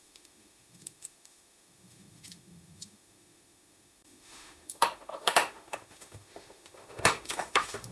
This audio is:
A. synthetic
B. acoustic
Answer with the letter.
A